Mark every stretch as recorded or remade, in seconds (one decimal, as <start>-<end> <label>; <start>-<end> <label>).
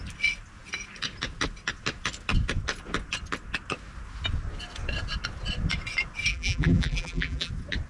0.0-6.3 recorded; 6.3-7.5 remade; 7.5-7.9 recorded